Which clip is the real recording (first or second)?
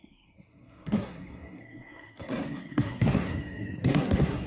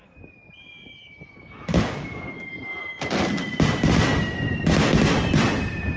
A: second